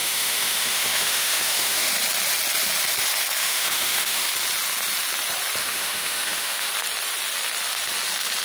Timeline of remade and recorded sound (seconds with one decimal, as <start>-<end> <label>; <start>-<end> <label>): 0.0-1.9 remade; 1.9-3.4 recorded; 3.4-4.3 remade; 4.3-5.6 recorded; 5.6-6.7 remade; 6.7-8.4 recorded